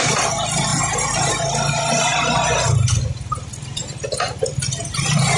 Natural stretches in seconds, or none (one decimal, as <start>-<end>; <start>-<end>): 0.0-5.4